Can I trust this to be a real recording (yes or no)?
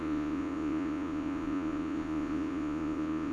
no